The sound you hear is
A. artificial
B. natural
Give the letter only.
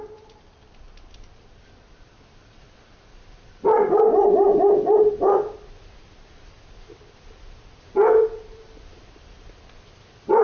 A